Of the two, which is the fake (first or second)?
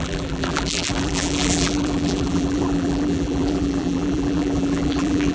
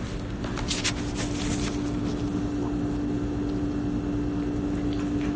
first